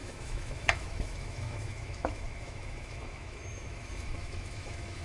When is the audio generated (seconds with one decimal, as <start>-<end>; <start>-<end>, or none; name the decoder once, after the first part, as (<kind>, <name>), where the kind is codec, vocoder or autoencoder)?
0.0-5.0 (autoencoder, DAC-VAE)